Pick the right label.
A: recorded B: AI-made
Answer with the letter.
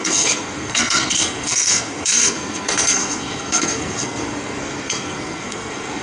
B